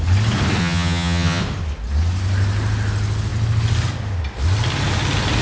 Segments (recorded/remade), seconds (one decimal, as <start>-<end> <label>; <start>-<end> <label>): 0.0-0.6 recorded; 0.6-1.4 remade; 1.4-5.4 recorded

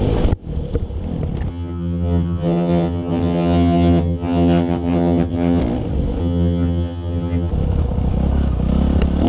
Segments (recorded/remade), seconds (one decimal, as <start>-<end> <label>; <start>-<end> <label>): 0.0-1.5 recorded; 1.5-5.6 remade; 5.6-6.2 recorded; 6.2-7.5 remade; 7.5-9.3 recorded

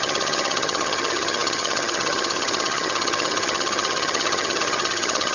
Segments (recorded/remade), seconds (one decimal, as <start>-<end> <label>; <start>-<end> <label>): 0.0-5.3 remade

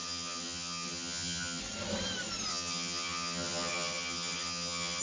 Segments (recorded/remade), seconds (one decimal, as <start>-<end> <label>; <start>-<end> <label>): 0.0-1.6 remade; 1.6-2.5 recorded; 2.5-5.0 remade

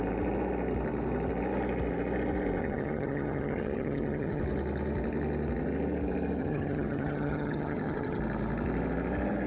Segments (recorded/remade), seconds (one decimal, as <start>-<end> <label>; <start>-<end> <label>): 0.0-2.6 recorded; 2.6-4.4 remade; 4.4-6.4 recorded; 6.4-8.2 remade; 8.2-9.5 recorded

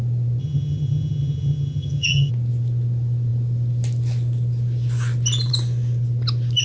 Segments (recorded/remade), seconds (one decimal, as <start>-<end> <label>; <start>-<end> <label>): 0.0-0.4 recorded; 0.4-2.3 remade; 2.3-6.6 recorded